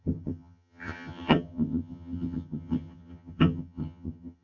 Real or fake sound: fake